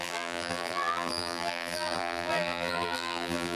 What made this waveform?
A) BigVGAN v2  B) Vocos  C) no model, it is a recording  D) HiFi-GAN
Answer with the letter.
A